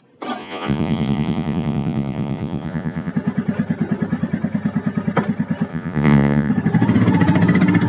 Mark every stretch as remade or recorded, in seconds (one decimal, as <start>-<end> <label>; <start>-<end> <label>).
0.0-0.4 recorded; 0.4-3.1 remade; 3.1-5.7 recorded; 5.7-6.5 remade; 6.5-7.9 recorded